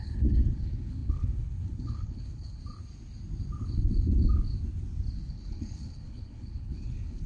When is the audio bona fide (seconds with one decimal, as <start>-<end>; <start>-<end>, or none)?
2.6-5.3